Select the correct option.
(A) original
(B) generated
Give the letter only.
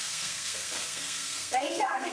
B